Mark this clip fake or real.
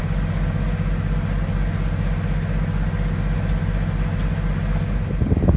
real